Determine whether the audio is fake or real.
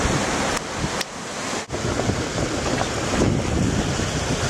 real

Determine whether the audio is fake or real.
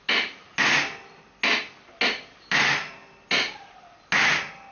real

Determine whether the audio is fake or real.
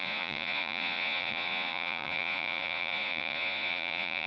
fake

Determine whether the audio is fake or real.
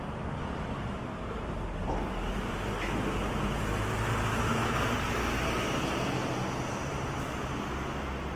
real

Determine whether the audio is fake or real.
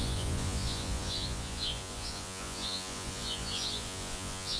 fake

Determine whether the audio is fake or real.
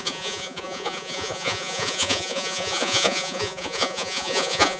fake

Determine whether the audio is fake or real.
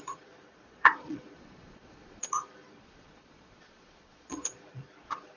fake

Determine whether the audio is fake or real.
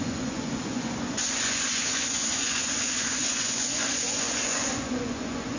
fake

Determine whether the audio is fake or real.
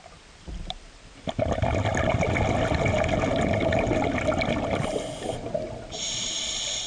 real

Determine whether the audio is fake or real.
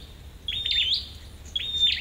real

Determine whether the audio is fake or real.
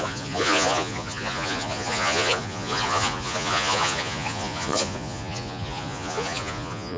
fake